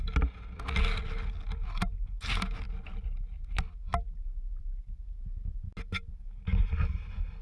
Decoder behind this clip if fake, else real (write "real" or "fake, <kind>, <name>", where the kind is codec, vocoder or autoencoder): real